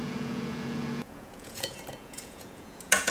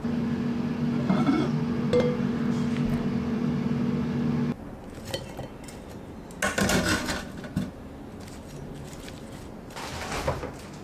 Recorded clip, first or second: second